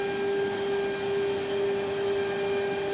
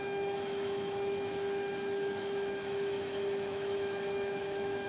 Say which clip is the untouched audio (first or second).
first